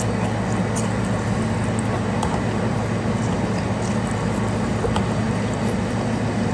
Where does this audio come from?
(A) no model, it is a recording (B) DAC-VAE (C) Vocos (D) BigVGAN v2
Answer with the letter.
A